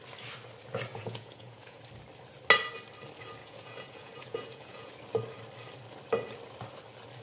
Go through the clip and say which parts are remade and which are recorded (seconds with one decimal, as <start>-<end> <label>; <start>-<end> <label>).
0.0-0.9 recorded; 0.9-1.8 remade; 1.8-3.4 recorded; 3.4-4.9 remade; 4.9-7.2 recorded